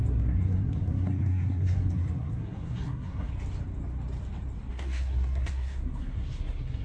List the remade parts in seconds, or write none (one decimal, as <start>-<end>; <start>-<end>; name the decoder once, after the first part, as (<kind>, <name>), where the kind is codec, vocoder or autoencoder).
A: 0.0-3.3 (codec, SNAC); 4.7-6.8

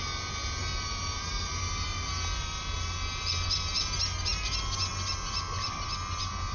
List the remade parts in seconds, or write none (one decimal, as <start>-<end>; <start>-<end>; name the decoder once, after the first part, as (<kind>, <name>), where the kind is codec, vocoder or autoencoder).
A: none

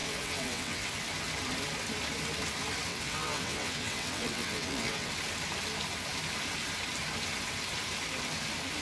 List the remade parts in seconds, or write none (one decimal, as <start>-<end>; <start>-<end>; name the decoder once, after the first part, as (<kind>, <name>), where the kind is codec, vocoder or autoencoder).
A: 0.0-0.9 (vocoder, WaveNeXt); 2.9-5.1

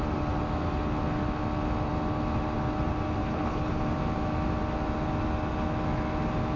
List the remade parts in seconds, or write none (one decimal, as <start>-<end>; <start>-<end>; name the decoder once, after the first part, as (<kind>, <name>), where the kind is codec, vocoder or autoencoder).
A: 3.2-3.8 (codec, HILCodec)

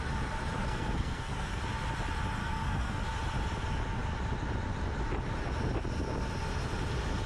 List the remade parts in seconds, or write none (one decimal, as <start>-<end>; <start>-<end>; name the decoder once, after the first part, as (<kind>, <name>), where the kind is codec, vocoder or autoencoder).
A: 0.6-1.6 (codec, SNAC); 2.4-3.0